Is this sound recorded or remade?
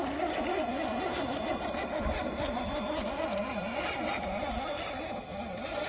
recorded